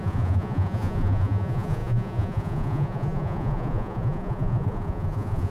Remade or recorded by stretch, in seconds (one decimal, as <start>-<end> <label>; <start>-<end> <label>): 0.0-5.5 remade